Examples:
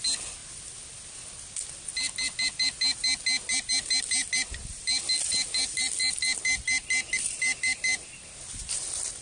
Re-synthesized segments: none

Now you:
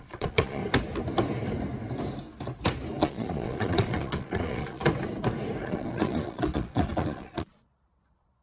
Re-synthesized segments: 0.0-0.6 (vocoder, Vocos); 3.0-4.8; 5.6-8.4

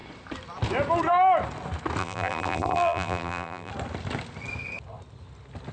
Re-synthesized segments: 2.0-3.7 (vocoder, BigVGAN v2)

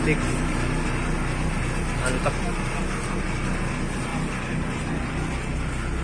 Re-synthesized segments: none